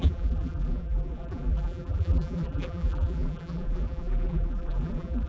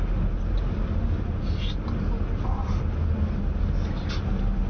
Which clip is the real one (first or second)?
second